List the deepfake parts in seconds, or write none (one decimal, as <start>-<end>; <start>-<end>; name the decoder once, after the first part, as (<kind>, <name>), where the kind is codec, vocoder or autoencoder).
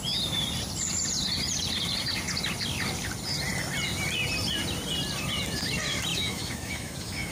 6.1-7.3 (autoencoder, DAC-VAE)